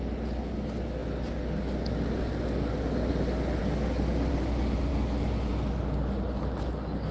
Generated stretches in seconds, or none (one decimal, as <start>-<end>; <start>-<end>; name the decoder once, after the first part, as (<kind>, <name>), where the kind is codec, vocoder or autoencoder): none